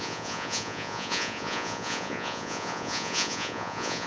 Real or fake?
fake